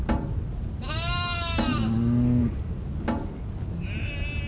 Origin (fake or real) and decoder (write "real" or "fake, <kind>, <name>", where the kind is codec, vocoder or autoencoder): real